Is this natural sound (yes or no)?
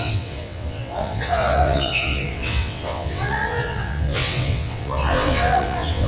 no